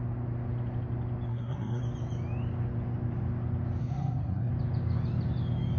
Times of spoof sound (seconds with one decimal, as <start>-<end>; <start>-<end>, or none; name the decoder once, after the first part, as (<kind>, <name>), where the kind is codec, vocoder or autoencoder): 1.3-1.8 (codec, SNAC); 3.8-4.5